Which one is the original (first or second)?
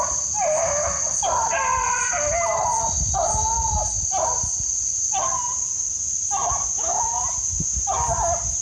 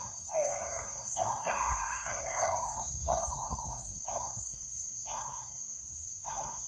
first